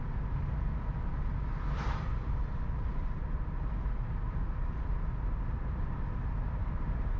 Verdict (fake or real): real